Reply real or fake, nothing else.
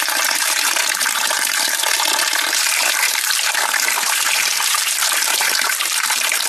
fake